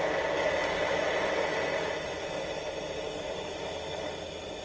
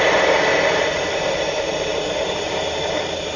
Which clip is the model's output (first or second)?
second